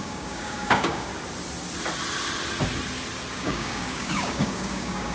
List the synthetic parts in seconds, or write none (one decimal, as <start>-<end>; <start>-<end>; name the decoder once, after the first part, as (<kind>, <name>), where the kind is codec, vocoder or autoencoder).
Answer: 0.0-1.1 (codec, DAC); 3.3-5.1